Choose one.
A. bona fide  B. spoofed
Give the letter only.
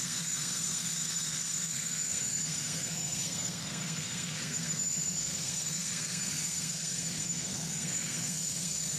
B